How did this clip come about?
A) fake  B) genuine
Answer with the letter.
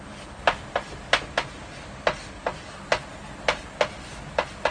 B